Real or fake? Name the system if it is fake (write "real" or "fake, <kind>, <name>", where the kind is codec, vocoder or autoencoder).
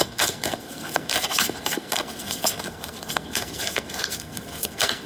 fake, codec, SNAC